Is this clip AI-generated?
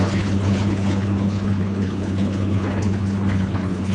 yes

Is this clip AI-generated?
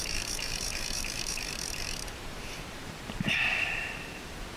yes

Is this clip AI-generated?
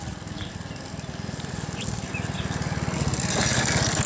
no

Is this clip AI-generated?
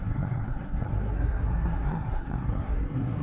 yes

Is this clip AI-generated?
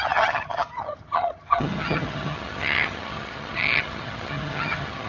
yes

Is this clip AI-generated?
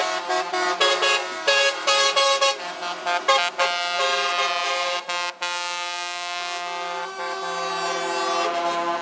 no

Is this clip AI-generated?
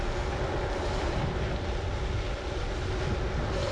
no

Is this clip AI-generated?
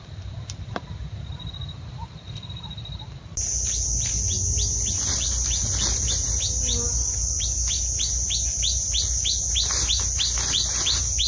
no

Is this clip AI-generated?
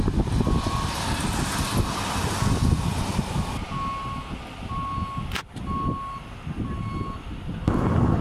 no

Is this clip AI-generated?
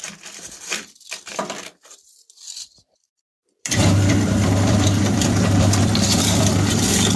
yes